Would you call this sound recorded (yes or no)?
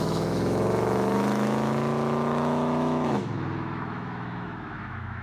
no